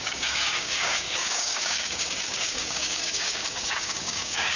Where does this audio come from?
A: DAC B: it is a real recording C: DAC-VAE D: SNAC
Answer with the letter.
A